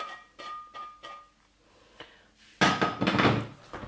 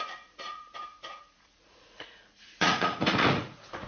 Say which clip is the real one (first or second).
first